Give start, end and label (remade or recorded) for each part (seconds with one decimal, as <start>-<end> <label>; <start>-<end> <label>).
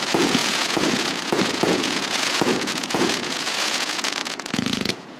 0.0-5.2 remade